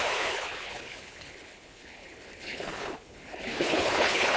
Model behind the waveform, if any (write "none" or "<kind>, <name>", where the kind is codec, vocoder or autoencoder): codec, HILCodec